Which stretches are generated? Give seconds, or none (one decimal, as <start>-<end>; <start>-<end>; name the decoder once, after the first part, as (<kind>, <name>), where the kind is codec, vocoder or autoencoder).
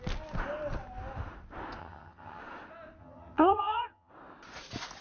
1.8-2.4 (vocoder, HiFi-GAN); 3.0-4.1